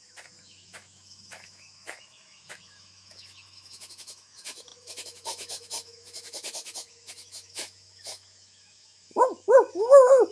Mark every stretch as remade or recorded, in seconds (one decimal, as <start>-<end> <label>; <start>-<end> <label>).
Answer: 0.0-10.3 remade